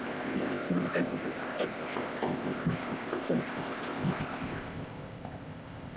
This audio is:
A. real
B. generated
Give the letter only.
B